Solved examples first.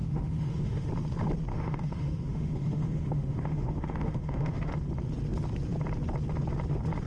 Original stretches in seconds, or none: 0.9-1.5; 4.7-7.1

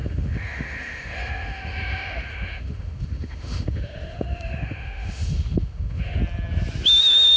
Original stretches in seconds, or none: 6.2-7.0

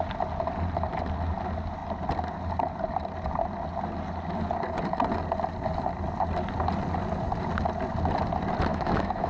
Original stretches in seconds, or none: 0.0-8.7

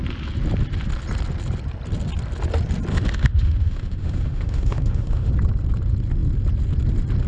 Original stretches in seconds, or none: 0.0-2.9; 5.3-7.3

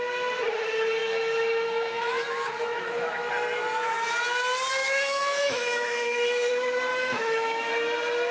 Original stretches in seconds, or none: 0.0-1.0; 3.3-4.8; 6.5-6.9; 7.7-8.3

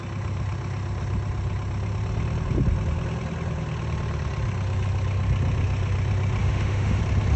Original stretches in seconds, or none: 0.0-6.4; 7.0-7.4